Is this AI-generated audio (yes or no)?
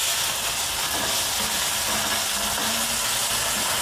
no